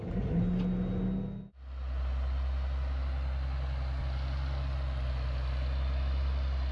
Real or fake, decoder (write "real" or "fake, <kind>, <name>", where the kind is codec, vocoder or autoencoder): real